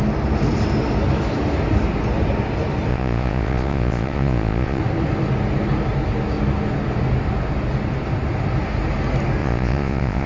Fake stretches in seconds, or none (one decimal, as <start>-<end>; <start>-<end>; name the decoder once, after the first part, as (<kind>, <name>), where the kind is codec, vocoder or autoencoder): 2.9-4.8 (vocoder, Vocos); 9.4-10.3